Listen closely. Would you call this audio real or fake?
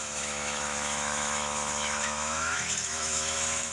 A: fake